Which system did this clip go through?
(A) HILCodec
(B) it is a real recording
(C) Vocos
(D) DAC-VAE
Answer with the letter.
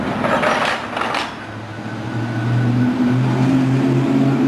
B